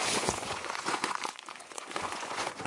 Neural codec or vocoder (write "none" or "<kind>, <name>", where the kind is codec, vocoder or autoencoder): vocoder, Vocos